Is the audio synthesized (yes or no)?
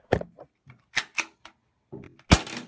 no